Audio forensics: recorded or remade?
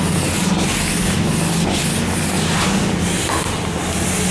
recorded